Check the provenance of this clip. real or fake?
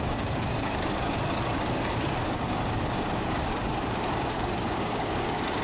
fake